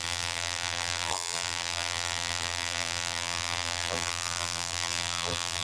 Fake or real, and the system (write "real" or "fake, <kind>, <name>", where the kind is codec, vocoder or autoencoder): fake, vocoder, BigVGAN v2